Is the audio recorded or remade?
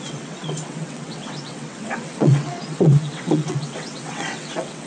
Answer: remade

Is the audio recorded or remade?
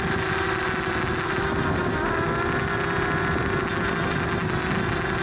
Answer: recorded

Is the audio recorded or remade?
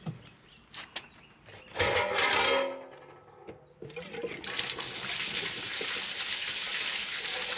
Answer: recorded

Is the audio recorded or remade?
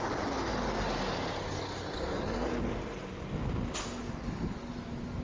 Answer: recorded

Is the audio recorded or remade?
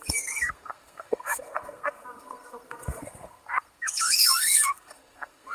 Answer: remade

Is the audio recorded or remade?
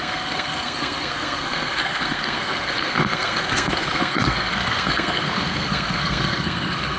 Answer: remade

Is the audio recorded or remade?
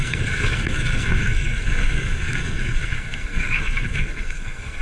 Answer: remade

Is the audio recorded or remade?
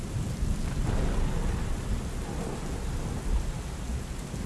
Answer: recorded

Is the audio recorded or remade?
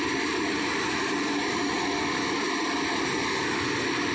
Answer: recorded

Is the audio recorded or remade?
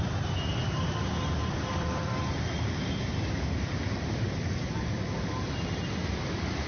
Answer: remade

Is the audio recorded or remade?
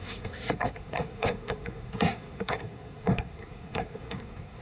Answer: remade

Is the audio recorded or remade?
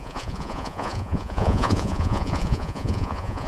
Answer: remade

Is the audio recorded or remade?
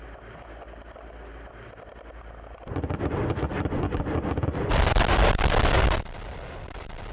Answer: recorded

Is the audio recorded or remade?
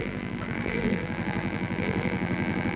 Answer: remade